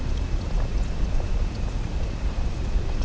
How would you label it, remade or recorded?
remade